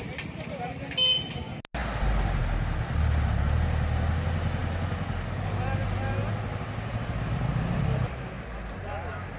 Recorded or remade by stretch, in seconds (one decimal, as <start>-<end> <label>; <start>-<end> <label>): 0.0-9.4 recorded

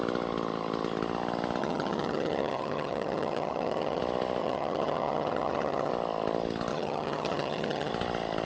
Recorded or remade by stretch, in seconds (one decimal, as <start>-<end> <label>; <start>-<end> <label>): 0.0-1.6 recorded; 1.6-4.0 remade; 4.0-4.4 recorded; 4.4-5.9 remade; 5.9-6.7 recorded; 6.7-7.9 remade; 7.9-8.4 recorded